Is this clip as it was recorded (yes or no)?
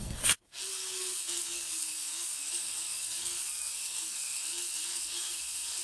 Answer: no